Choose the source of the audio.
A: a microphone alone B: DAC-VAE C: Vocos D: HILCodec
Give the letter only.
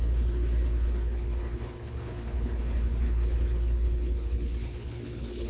D